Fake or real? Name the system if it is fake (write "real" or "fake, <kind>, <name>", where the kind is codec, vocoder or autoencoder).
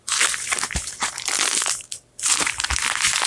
real